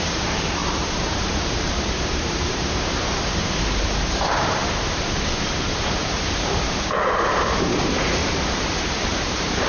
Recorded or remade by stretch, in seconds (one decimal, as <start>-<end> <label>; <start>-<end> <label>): 0.0-8.2 remade; 8.2-8.9 recorded; 8.9-9.7 remade